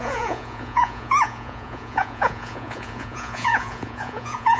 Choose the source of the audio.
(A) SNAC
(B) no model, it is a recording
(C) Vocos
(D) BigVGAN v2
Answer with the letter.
C